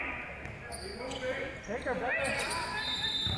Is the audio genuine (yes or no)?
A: yes